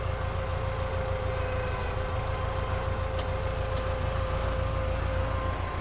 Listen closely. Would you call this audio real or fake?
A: real